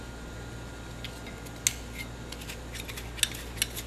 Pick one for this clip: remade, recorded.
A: recorded